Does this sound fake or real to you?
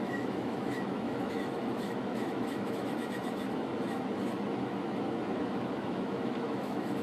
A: fake